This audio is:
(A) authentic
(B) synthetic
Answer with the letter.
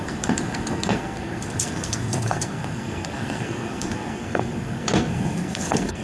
B